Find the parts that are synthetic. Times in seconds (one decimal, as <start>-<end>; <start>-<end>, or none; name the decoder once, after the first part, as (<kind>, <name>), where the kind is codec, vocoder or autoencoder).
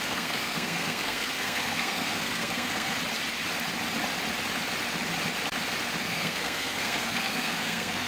0.0-3.0 (codec, SNAC); 6.0-8.1